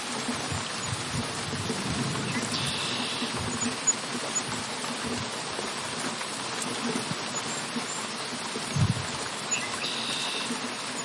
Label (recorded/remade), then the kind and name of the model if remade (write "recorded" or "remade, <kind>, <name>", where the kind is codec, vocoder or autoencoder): recorded